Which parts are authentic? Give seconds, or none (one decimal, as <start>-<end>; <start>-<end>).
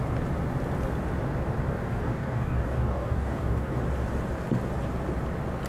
0.0-1.7; 3.8-5.7